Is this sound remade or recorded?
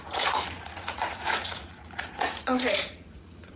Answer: remade